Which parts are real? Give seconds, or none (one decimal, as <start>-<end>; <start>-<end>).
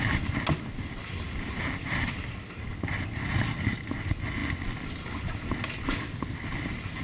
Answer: 0.0-7.0